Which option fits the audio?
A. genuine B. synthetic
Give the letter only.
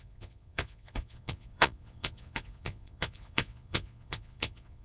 B